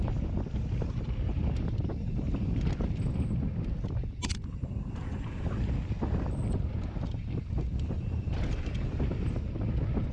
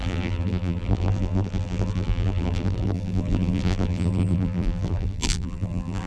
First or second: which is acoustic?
first